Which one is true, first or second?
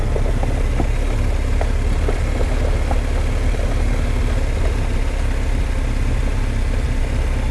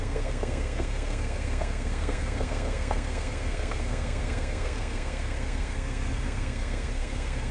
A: first